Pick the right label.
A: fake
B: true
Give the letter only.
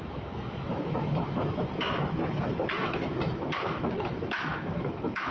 A